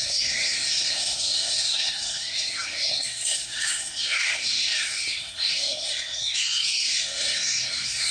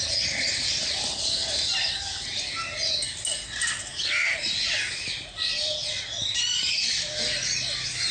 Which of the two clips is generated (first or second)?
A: first